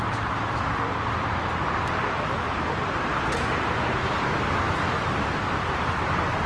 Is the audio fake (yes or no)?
no